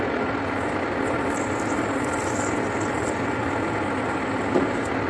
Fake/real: real